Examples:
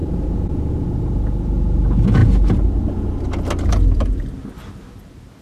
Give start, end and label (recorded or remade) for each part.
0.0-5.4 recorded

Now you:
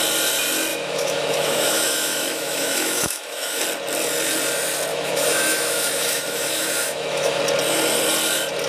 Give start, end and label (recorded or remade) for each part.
0.0-0.7 recorded; 0.7-3.6 remade; 3.6-4.9 recorded; 4.9-7.4 remade; 7.4-8.7 recorded

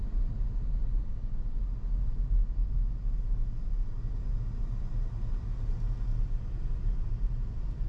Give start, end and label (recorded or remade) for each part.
0.0-7.9 recorded

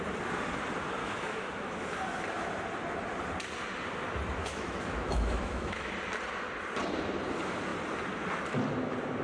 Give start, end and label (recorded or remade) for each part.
0.0-1.0 recorded; 1.0-1.9 remade; 1.9-4.4 recorded; 4.4-5.9 remade; 5.9-9.2 recorded